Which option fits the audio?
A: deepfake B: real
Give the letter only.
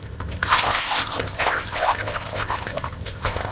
A